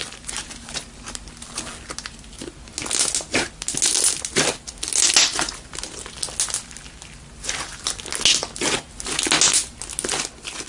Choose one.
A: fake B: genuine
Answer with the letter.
B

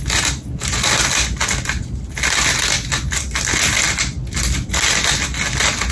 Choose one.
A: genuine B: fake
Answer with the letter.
A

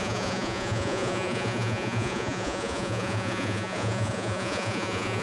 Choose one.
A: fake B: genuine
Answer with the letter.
A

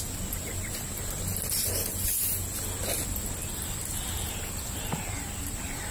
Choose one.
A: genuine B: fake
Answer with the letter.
A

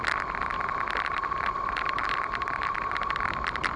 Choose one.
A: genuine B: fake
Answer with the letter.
A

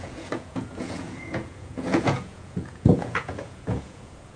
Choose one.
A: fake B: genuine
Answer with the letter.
A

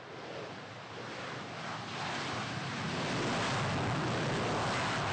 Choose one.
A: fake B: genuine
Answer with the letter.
B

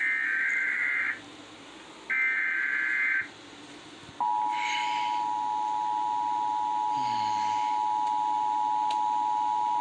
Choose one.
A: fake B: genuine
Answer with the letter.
B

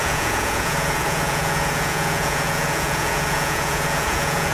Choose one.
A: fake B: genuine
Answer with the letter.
A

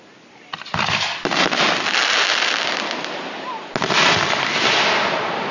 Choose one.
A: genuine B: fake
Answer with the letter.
A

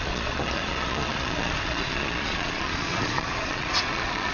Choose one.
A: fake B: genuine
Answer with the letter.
A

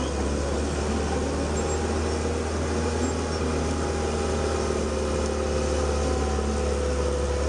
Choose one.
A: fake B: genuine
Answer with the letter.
B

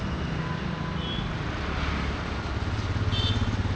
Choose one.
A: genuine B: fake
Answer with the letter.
A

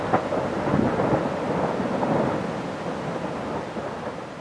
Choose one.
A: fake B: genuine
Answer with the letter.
B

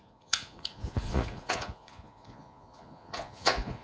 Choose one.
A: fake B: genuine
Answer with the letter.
A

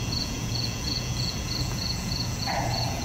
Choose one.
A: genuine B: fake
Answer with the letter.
B